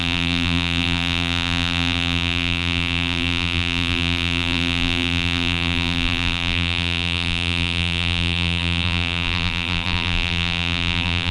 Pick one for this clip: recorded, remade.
remade